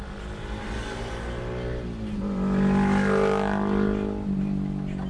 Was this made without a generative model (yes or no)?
yes